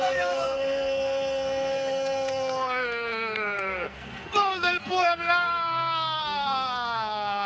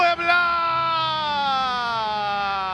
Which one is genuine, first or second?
second